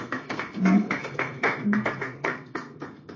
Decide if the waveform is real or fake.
fake